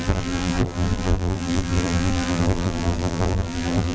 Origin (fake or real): fake